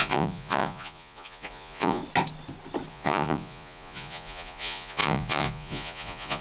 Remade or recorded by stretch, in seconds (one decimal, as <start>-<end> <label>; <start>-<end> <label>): 0.0-2.0 remade; 2.0-2.9 recorded; 2.9-6.4 remade